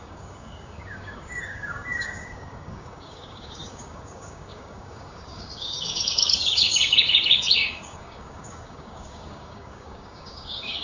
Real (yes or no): no